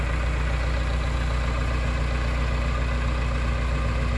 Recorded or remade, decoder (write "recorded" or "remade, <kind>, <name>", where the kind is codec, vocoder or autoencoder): recorded